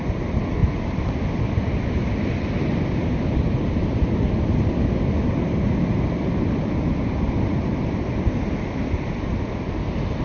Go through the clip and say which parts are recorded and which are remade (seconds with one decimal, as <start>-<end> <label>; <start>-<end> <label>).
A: 0.0-10.2 recorded